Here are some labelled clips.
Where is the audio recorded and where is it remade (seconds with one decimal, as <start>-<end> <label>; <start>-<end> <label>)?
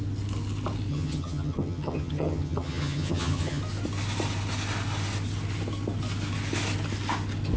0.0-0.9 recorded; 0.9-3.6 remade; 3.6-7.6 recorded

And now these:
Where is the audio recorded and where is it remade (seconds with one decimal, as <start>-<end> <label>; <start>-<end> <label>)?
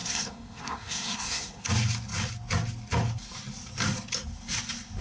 0.0-1.7 remade; 1.7-5.0 recorded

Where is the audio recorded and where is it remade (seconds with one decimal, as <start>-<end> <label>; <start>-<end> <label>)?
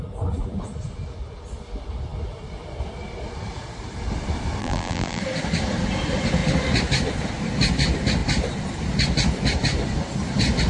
0.0-4.6 recorded; 4.6-5.2 remade; 5.2-10.7 recorded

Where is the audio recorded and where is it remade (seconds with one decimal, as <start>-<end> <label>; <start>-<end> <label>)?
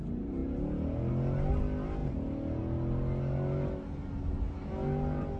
0.0-5.4 recorded